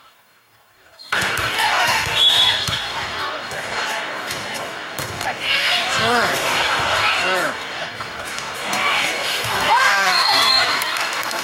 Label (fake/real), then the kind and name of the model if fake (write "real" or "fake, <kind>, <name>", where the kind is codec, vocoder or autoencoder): fake, codec, DAC